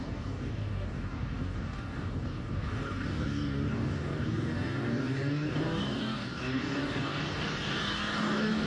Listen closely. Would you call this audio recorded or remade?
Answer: remade